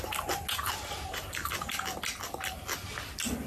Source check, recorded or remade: recorded